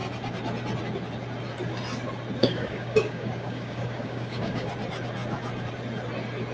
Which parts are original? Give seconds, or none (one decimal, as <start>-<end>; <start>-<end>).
0.0-2.4; 4.7-6.5